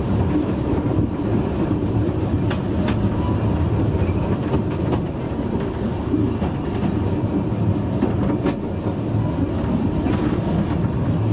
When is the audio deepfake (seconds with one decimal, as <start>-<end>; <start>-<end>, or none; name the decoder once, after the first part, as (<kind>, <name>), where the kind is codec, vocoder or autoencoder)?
0.4-2.4 (vocoder, BigVGAN v2)